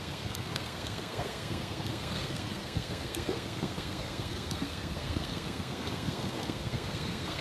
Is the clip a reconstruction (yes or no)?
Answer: yes